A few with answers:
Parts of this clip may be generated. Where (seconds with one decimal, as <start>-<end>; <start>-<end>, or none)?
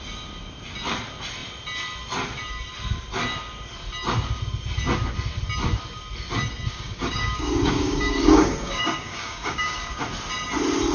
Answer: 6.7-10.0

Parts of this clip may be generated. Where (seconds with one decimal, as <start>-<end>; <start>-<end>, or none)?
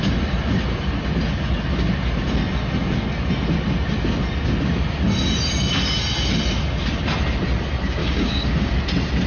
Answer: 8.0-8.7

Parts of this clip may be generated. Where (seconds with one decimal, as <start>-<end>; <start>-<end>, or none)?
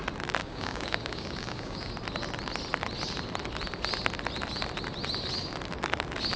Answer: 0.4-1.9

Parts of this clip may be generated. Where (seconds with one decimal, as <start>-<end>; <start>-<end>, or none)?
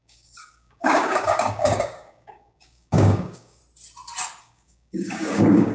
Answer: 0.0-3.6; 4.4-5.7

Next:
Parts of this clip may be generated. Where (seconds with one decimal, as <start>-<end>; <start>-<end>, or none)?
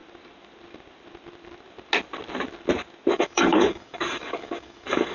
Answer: 3.1-5.1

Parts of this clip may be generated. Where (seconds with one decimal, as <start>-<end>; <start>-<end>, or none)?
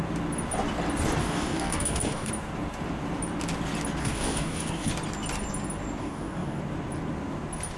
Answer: 1.2-2.3; 4.0-4.9; 6.0-6.6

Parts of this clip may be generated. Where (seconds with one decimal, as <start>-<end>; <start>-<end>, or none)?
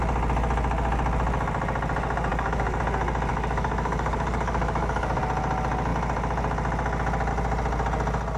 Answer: 2.3-2.8; 3.3-5.2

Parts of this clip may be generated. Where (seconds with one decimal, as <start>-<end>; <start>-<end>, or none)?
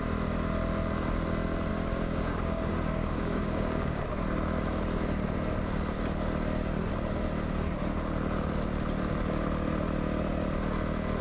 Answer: 1.7-4.1